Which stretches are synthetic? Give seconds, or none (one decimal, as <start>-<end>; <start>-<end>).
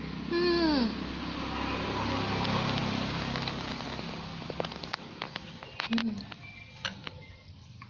none